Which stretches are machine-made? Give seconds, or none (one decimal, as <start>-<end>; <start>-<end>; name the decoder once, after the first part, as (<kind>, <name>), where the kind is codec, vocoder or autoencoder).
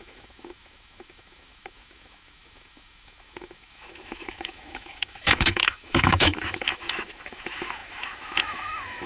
0.0-9.1 (autoencoder, DAC-VAE)